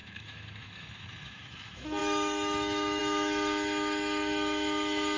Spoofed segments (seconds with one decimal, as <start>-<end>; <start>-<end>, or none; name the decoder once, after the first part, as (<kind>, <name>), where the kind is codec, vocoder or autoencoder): 0.0-5.2 (autoencoder, DAC-VAE)